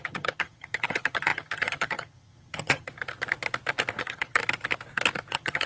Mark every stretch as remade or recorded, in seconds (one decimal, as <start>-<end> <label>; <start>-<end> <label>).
0.0-2.9 remade; 2.9-4.0 recorded; 4.0-4.4 remade; 4.4-5.3 recorded; 5.3-5.7 remade